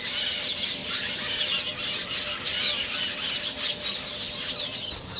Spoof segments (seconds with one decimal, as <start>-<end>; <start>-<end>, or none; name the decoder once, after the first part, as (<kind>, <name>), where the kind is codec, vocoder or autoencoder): none